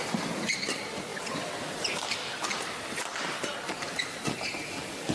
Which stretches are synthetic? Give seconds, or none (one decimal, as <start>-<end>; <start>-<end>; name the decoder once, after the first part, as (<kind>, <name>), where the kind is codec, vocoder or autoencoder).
none